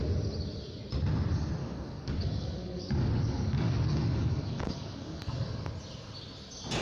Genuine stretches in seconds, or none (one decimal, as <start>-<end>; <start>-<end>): 0.0-1.6; 5.7-6.8